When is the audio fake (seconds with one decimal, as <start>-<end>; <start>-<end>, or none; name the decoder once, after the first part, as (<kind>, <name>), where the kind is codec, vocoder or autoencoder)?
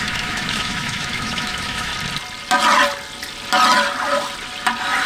0.0-1.9 (autoencoder, DAC-VAE)